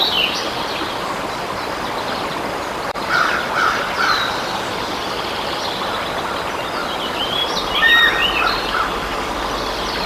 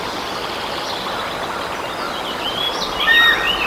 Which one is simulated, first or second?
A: first